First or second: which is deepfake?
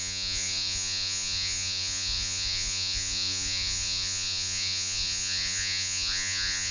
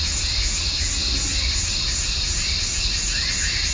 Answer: first